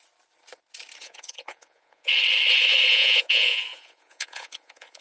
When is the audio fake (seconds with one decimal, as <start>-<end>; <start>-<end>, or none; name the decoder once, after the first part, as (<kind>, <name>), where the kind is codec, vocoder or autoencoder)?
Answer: 1.0-2.1 (vocoder, Vocos); 2.9-5.0